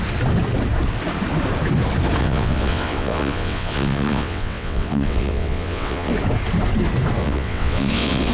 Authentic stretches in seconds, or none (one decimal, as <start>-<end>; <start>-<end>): 0.0-2.2; 6.1-7.2